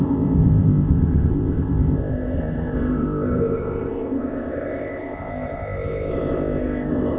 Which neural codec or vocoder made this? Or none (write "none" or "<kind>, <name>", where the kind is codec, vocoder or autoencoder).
codec, ZipCodec